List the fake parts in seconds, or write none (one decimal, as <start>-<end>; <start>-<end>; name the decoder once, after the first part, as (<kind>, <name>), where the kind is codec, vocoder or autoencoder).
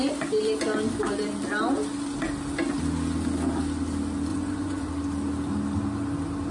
4.3-4.9 (vocoder, Vocos)